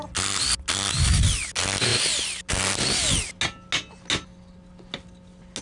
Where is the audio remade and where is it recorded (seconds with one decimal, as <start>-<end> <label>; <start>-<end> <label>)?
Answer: 0.0-5.6 recorded